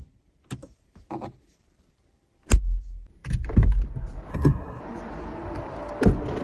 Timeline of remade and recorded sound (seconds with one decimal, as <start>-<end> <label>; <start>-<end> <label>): 0.0-4.3 recorded; 4.3-4.8 remade; 4.8-6.4 recorded